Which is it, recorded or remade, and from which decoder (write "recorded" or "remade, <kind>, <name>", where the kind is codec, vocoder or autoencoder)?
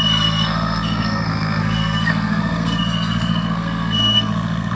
remade, codec, SNAC